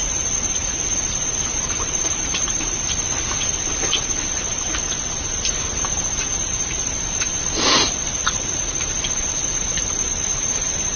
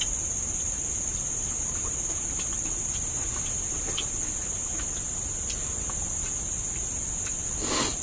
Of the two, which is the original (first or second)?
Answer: second